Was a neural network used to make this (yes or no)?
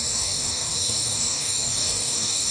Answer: yes